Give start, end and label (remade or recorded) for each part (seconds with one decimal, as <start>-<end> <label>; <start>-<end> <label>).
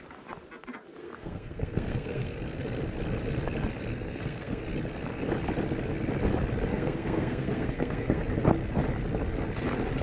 0.0-1.0 recorded; 1.0-2.4 remade; 2.4-3.9 recorded; 3.9-4.6 remade; 4.6-6.7 recorded; 6.7-8.2 remade; 8.2-10.0 recorded